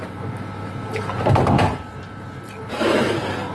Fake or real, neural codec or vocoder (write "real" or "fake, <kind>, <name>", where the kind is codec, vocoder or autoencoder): fake, vocoder, BigVGAN v2